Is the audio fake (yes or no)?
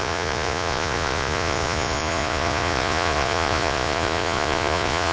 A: yes